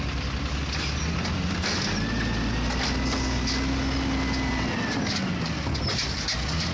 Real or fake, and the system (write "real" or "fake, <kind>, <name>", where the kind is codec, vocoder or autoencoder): real